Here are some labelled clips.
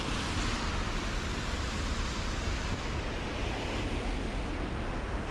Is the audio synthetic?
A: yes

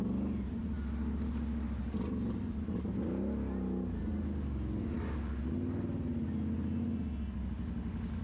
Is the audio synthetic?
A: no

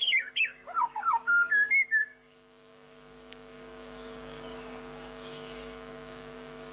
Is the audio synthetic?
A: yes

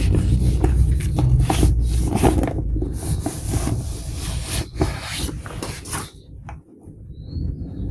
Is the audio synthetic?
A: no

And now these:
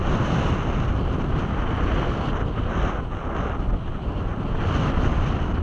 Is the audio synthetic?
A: no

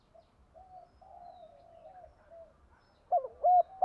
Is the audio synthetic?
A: no